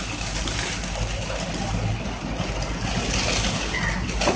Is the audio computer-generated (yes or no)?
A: no